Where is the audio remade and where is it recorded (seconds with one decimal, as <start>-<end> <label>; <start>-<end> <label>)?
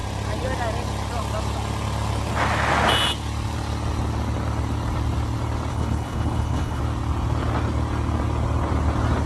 0.0-5.7 recorded; 5.7-6.8 remade; 6.8-9.3 recorded